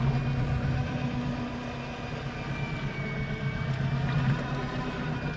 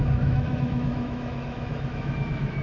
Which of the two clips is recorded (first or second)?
first